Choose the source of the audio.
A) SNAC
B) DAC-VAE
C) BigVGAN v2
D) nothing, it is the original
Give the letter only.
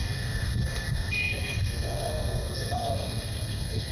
A